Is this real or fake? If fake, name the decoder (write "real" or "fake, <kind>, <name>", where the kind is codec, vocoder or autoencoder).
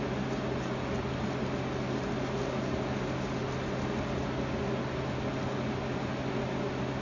real